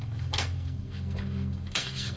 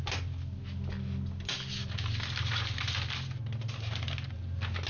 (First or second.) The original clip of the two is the second